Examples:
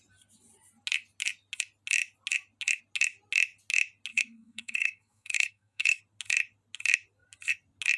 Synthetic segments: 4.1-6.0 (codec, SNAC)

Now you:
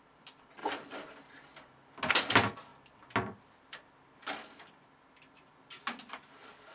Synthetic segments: none

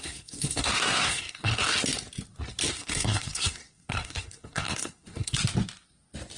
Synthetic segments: 0.0-1.5 (codec, SNAC); 2.7-5.4

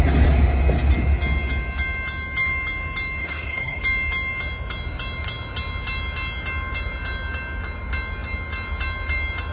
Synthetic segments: 3.2-3.8 (codec, SNAC)

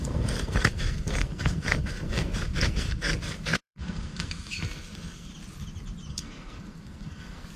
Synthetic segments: 0.0-5.3 (codec, SNAC); 6.1-7.6